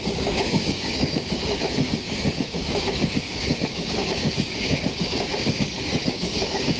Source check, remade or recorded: remade